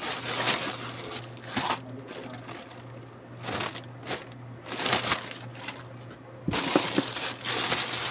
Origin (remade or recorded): recorded